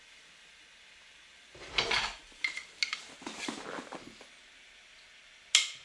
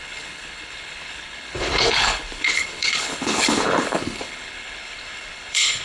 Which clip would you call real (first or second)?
first